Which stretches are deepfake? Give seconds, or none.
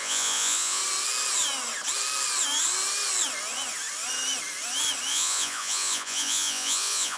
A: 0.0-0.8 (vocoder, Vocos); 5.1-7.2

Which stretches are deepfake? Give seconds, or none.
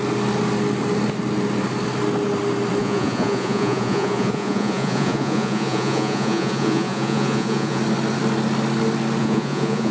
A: 2.8-7.8 (vocoder, Vocos); 9.2-9.9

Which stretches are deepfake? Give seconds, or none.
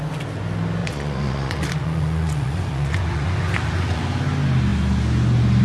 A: 0.8-4.0 (vocoder, Vocos)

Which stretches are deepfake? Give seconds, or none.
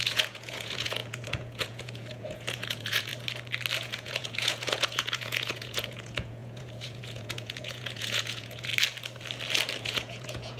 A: 0.0-3.1 (vocoder, Vocos); 3.8-8.7; 9.8-10.6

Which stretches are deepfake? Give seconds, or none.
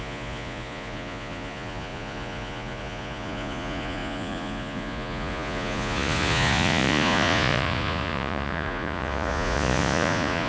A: 0.0-10.5 (vocoder, Vocos)